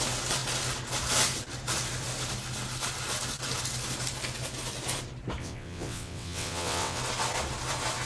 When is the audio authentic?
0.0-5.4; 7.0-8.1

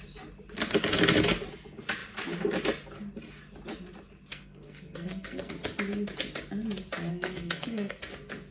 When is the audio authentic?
0.0-4.3; 5.5-7.1; 8.0-8.5